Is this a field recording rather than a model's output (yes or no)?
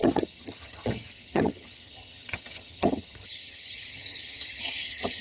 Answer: no